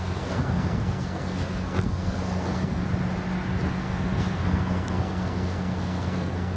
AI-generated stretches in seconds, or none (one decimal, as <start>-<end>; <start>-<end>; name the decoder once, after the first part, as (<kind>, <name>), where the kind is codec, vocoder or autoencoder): 0.0-2.8 (codec, SNAC); 3.7-6.6